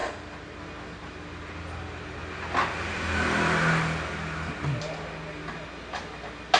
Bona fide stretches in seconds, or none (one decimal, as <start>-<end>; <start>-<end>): 0.0-6.6